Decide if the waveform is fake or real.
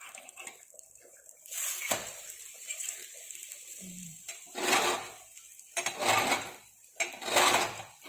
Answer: fake